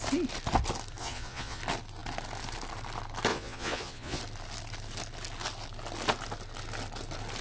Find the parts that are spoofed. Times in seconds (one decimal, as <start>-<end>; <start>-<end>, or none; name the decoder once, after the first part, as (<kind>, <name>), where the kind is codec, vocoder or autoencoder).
1.0-1.6 (vocoder, Vocos); 3.3-4.2